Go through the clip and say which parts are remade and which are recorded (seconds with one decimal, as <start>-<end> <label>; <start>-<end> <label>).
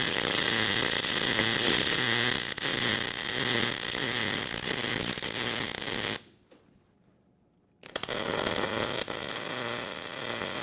0.0-10.6 recorded